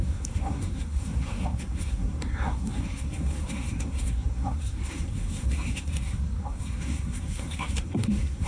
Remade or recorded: remade